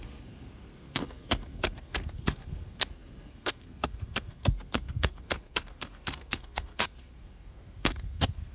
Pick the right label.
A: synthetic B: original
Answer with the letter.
A